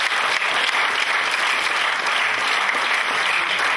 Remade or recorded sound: recorded